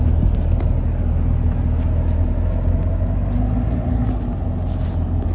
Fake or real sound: real